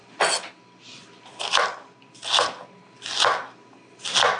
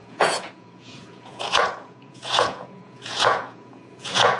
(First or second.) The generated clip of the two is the second